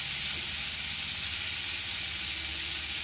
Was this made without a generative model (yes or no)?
yes